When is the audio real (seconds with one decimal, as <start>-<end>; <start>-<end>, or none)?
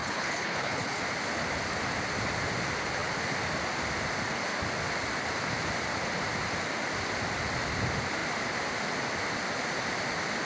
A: 1.0-10.5